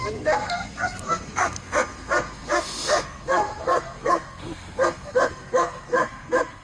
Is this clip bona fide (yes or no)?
no